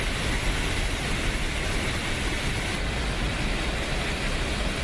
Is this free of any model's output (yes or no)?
yes